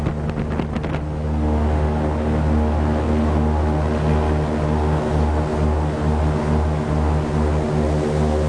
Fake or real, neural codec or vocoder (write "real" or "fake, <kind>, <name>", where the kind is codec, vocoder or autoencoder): real